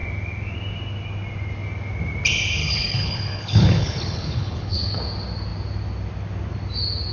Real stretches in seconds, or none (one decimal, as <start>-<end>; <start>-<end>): 0.0-2.6; 5.0-7.1